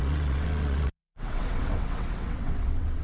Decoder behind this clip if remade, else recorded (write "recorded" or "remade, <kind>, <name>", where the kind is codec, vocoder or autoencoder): remade, vocoder, WaveNeXt